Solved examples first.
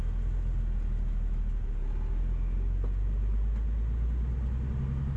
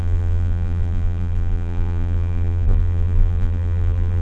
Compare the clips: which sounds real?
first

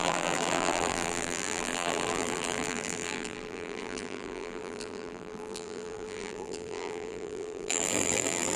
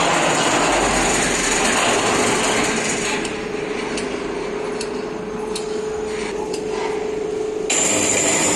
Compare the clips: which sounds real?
second